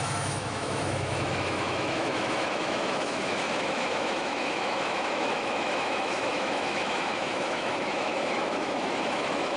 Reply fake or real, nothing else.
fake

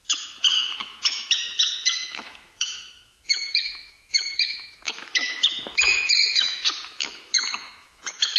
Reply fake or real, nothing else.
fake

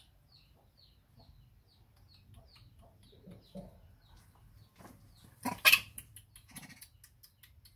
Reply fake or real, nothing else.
real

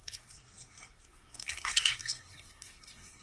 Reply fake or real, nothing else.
fake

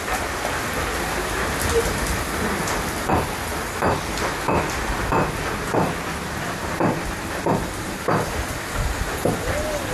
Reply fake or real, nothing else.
real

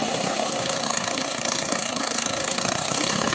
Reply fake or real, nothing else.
fake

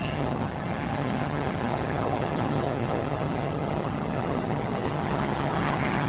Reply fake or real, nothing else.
fake